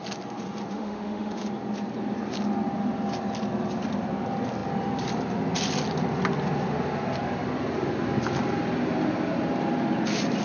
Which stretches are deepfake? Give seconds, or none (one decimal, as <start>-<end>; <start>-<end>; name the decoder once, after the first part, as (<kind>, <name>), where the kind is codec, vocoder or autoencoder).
0.7-1.5 (autoencoder, DAC-VAE)